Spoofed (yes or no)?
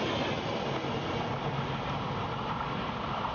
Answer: no